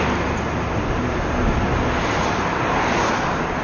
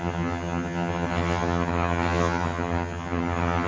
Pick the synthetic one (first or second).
second